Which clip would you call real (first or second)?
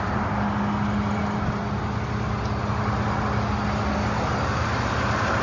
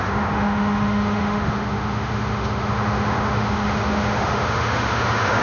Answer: first